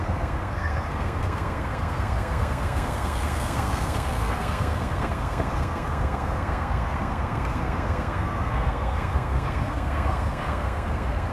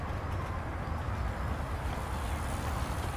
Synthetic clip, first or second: first